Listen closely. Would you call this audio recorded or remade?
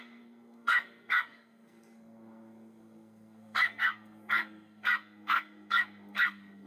remade